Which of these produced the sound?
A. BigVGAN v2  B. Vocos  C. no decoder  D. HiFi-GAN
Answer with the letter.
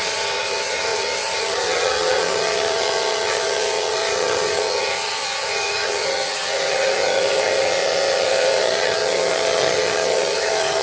D